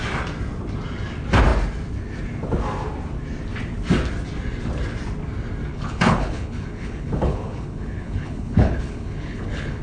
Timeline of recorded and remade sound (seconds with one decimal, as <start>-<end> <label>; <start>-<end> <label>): 0.0-5.7 recorded; 5.7-9.8 remade